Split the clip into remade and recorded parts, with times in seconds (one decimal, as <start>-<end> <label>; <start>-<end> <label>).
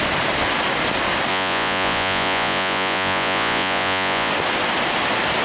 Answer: 0.0-1.3 recorded; 1.3-4.3 remade; 4.3-5.4 recorded